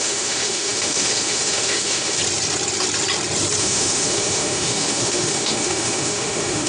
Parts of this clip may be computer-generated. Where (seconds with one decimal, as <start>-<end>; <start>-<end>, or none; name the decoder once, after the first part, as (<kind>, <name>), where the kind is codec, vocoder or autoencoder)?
0.0-2.2 (autoencoder, DAC-VAE); 3.6-6.7